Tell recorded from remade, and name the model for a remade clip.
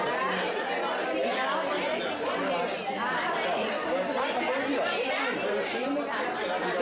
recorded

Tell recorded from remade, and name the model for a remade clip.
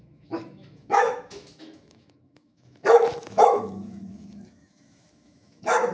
remade, autoencoder, DAC-VAE